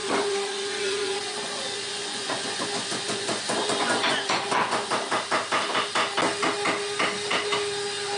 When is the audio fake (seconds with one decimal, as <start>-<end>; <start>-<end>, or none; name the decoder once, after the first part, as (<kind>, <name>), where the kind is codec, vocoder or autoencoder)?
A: 0.0-4.9 (vocoder, Vocos)